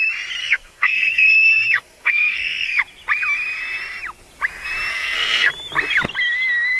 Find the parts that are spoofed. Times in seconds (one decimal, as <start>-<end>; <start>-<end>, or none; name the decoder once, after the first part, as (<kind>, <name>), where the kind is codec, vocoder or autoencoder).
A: 0.4-2.8 (codec, SNAC); 4.9-5.5